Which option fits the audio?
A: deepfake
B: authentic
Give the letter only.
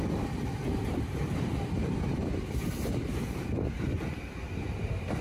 A